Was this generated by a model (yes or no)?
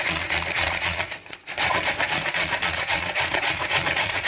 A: yes